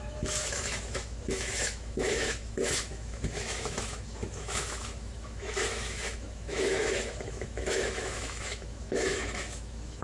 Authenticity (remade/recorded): remade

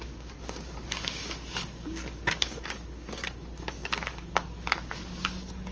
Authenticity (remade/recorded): remade